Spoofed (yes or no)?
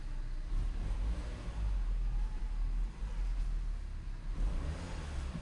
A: no